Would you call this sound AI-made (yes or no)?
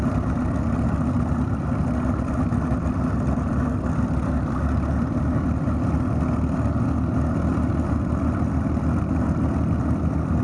no